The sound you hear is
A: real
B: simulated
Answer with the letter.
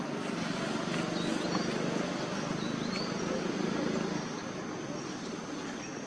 A